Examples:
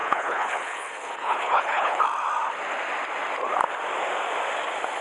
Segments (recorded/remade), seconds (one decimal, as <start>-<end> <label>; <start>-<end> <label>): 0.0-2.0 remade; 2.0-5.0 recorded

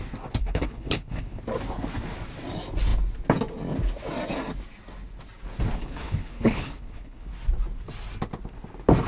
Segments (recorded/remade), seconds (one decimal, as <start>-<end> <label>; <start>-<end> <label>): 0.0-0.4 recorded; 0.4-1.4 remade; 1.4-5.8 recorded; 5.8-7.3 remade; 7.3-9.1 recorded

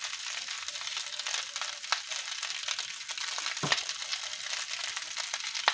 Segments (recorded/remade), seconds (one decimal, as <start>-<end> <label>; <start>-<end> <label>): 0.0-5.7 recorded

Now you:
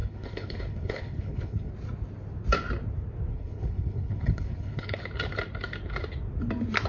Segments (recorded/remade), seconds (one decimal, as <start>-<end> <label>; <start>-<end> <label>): 0.0-1.7 remade; 1.7-3.3 recorded; 3.3-5.0 remade; 5.0-6.9 recorded

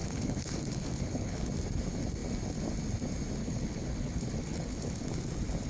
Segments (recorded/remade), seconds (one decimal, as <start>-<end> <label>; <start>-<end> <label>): 0.0-1.5 remade; 1.5-3.4 recorded; 3.4-5.1 remade; 5.1-5.7 recorded

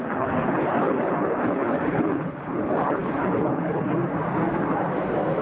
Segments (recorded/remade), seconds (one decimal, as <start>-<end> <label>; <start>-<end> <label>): 0.0-4.0 remade; 4.0-5.4 recorded

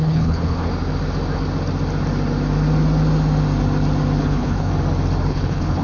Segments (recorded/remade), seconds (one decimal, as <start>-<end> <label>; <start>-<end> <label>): 0.0-0.7 remade; 0.7-4.2 recorded; 4.2-4.7 remade; 4.7-5.3 recorded; 5.3-5.8 remade

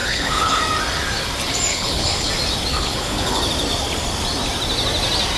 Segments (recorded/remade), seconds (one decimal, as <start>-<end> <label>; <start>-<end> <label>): 0.0-0.6 remade; 0.6-1.7 recorded; 1.7-2.3 remade; 2.3-2.7 recorded; 2.7-3.4 remade; 3.4-5.4 recorded